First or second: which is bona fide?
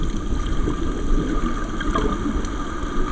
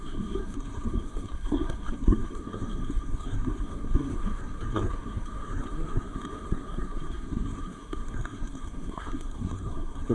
first